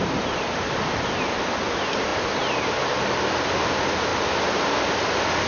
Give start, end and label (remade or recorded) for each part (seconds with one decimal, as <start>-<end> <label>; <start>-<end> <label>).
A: 0.0-5.5 recorded